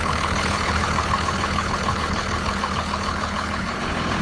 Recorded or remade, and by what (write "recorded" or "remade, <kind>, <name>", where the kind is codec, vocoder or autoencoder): remade, codec, HILCodec